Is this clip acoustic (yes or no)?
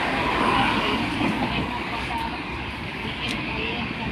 no